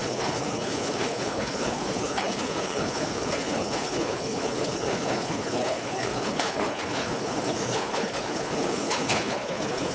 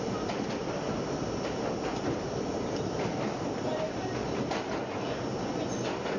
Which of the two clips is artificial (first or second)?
first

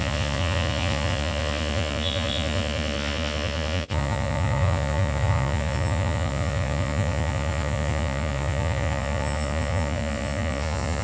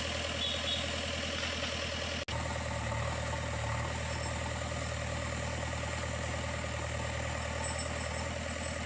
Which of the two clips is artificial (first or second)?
first